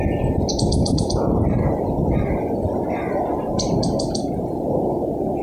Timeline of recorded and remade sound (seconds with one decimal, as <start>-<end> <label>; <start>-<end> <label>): 0.0-5.4 recorded